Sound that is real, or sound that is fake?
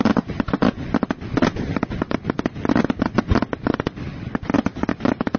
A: real